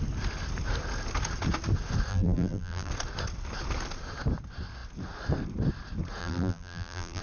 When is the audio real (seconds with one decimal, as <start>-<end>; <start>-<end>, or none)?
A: 0.0-2.1; 2.9-6.2